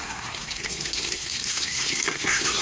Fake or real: fake